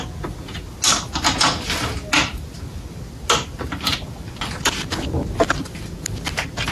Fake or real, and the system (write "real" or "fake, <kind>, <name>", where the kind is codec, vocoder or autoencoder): real